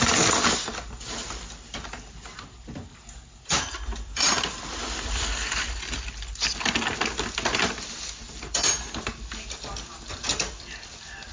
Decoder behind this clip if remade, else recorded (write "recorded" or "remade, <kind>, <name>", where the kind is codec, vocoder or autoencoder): recorded